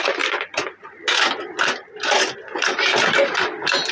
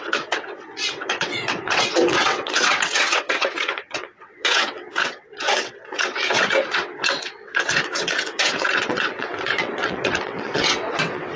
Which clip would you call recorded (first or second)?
first